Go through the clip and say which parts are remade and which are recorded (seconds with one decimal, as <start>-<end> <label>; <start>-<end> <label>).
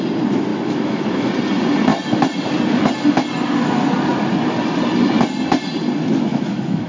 0.0-0.5 recorded; 0.5-1.3 remade; 1.3-6.3 recorded; 6.3-6.9 remade